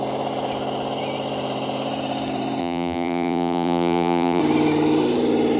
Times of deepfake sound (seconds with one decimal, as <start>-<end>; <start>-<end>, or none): 2.6-4.4